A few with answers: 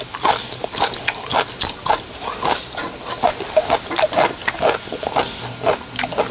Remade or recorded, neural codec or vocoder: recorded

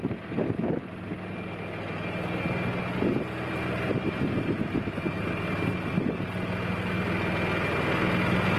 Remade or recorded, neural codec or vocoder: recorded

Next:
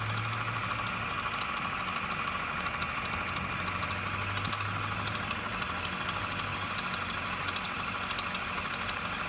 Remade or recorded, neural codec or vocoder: recorded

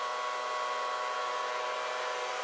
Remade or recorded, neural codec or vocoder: recorded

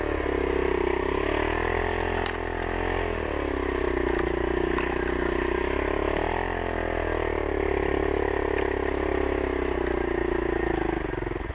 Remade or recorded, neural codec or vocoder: recorded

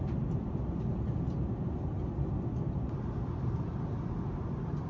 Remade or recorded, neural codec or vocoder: recorded